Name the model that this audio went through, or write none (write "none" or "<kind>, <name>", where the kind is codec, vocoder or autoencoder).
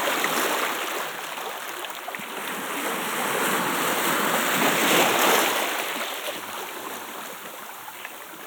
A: none